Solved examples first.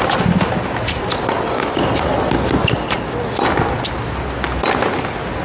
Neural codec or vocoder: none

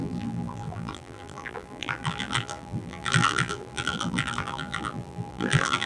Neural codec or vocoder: vocoder, BigVGAN v2